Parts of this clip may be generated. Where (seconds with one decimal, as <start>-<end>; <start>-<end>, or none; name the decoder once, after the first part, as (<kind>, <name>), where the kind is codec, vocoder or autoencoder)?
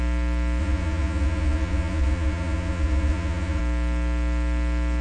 0.6-3.6 (vocoder, Vocos)